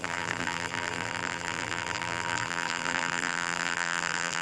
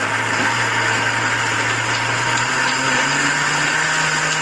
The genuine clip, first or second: second